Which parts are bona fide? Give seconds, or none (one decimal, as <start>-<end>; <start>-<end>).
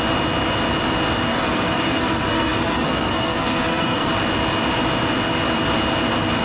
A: 0.0-1.3; 4.1-6.4